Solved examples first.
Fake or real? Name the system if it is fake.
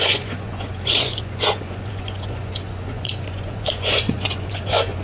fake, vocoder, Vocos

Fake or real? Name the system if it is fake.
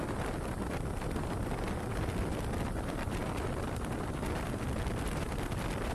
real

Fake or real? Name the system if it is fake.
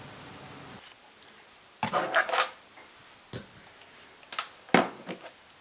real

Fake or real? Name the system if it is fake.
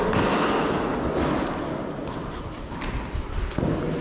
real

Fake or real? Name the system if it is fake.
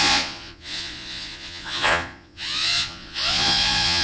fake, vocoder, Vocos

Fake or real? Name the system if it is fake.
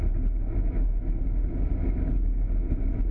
real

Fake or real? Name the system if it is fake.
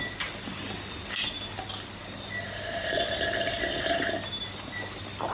real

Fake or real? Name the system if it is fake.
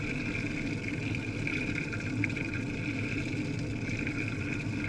real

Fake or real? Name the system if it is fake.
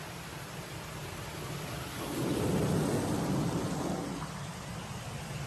real